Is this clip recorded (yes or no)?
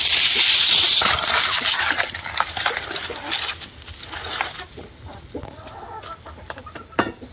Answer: yes